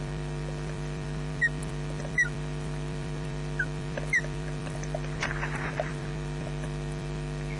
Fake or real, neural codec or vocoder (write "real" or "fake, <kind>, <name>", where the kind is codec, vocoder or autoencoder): fake, vocoder, BigVGAN v2